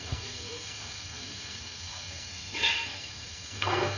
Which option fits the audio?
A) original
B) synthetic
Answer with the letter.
B